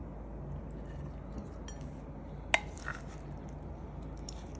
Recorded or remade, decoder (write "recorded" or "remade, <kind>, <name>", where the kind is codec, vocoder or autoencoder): recorded